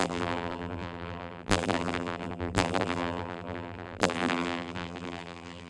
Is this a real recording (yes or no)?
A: no